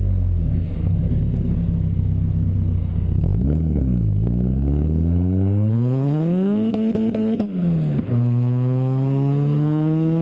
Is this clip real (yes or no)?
no